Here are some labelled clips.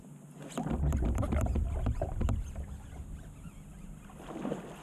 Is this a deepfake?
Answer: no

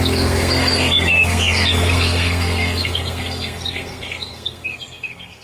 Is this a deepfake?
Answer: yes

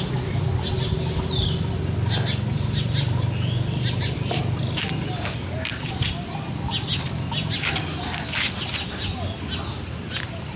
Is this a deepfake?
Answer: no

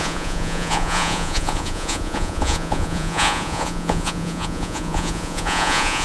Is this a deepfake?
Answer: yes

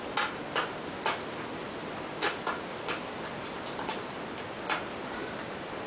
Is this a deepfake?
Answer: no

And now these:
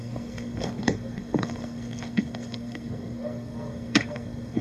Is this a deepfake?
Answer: yes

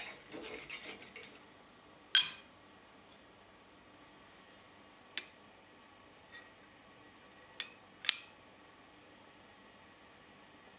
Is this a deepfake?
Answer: no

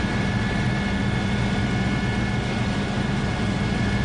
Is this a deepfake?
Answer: no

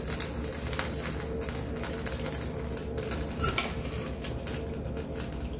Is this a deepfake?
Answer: no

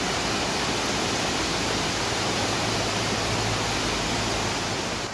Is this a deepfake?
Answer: no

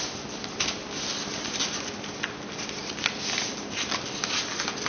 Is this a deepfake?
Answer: no